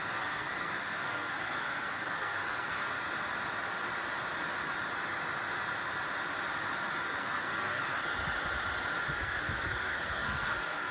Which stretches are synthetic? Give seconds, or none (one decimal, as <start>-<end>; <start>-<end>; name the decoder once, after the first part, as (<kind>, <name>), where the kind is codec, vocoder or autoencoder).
0.0-2.9 (codec, SNAC); 7.0-7.8; 9.1-10.9